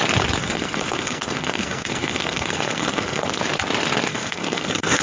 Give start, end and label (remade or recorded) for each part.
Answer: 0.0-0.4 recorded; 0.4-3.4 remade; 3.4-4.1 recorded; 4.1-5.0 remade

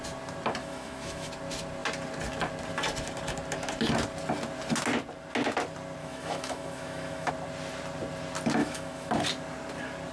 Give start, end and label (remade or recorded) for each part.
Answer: 0.0-0.6 recorded; 0.6-1.3 remade; 1.3-6.0 recorded; 6.0-7.3 remade; 7.3-8.6 recorded; 8.6-9.1 remade; 9.1-10.1 recorded

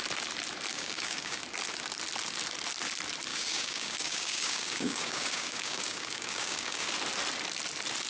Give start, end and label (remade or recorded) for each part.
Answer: 0.0-0.7 recorded; 0.7-1.4 remade; 1.4-3.3 recorded; 3.3-6.9 remade; 6.9-8.1 recorded

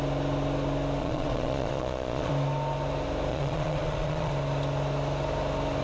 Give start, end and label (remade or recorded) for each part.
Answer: 0.0-1.0 recorded; 1.0-2.3 remade; 2.3-3.3 recorded; 3.3-4.3 remade; 4.3-5.8 recorded

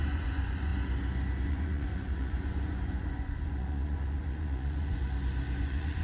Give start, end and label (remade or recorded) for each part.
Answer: 0.0-0.7 remade; 0.7-1.5 recorded; 1.5-5.0 remade; 5.0-5.6 recorded; 5.6-6.0 remade